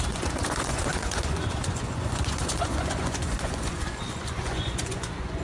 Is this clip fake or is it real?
fake